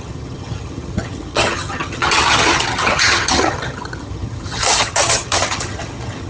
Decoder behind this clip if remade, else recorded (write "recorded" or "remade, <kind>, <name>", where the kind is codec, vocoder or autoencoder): remade, vocoder, HiFi-GAN